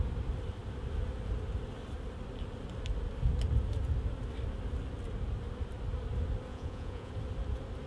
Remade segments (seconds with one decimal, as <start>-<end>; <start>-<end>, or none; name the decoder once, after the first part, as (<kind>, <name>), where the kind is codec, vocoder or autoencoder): 6.5-7.1 (vocoder, Vocos)